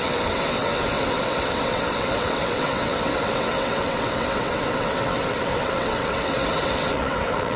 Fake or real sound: fake